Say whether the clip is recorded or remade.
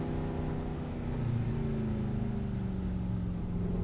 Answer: recorded